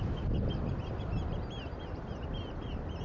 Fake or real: real